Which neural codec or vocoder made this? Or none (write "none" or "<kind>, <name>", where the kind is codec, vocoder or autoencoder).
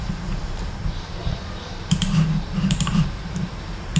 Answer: vocoder, BigVGAN v2